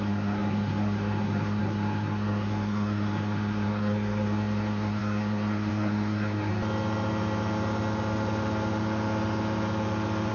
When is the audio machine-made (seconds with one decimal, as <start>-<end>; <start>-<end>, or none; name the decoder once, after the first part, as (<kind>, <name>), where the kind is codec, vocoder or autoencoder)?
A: 0.0-6.5 (codec, SNAC)